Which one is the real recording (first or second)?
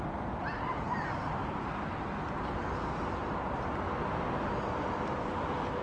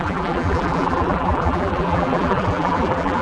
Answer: first